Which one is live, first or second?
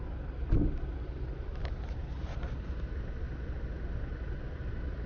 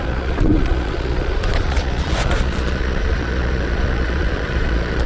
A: first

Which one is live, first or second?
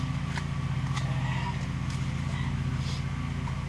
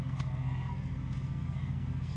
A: first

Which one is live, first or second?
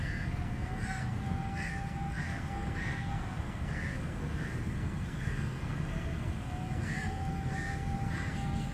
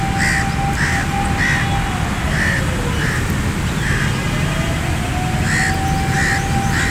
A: second